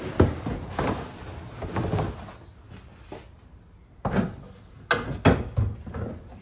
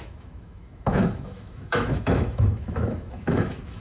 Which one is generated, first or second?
second